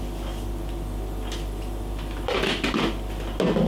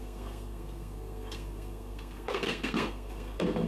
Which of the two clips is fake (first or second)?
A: second